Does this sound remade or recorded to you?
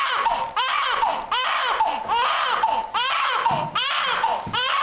recorded